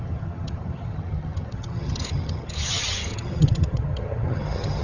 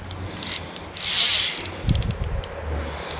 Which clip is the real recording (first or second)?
second